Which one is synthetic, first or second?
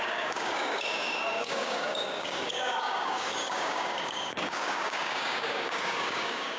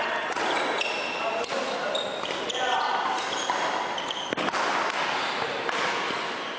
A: first